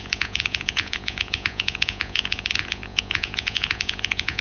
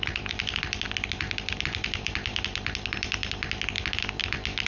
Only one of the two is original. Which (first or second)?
second